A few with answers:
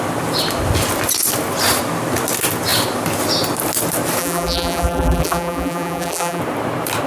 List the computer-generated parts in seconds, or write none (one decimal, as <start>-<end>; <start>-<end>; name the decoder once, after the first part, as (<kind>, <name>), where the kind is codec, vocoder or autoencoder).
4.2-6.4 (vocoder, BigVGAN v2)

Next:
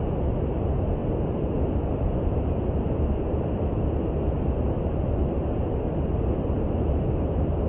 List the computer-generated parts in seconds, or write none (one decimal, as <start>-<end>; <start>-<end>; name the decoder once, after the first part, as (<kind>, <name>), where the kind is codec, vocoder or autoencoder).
1.0-3.8 (vocoder, BigVGAN v2)

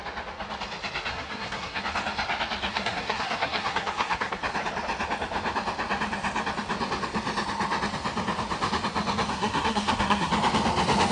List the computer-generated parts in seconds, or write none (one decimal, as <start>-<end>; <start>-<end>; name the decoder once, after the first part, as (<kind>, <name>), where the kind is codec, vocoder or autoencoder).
1.1-1.8 (codec, SNAC); 2.7-4.4; 9.3-10.3

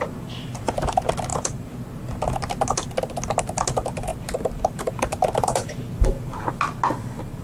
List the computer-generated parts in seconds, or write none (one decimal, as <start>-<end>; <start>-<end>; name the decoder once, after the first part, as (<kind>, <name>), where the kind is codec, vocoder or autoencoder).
4.1-6.4 (vocoder, BigVGAN v2)